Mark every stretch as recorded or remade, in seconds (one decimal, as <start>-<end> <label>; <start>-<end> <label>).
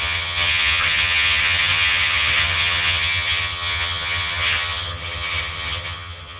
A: 0.0-6.4 remade